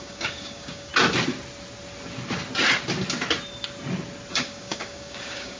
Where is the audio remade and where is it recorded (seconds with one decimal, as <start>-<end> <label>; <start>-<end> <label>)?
0.0-0.9 remade; 0.9-4.3 recorded; 4.3-5.6 remade